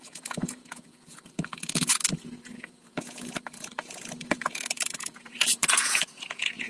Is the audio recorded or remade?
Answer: remade